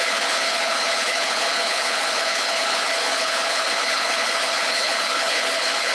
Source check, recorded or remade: remade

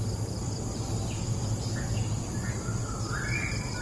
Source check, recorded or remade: recorded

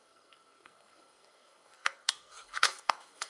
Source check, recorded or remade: remade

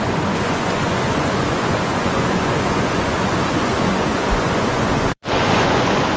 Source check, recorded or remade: remade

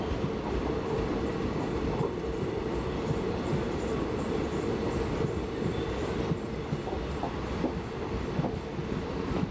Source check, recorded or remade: recorded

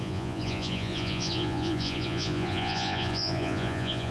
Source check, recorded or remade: remade